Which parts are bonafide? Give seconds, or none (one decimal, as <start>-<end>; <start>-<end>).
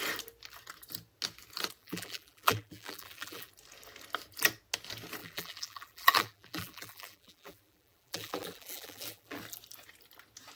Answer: 0.0-1.8; 3.5-5.2; 9.4-10.6